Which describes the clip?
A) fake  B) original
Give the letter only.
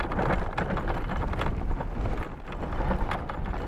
B